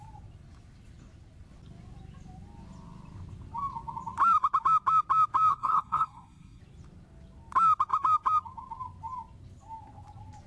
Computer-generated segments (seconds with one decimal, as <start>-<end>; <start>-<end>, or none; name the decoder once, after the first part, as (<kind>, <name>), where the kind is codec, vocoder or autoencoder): 5.5-6.6 (codec, SNAC)